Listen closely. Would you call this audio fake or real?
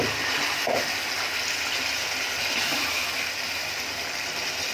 real